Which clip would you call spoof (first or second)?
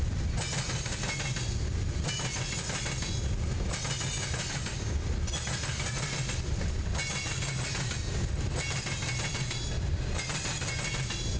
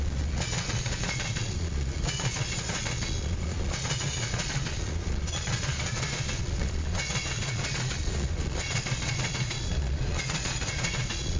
second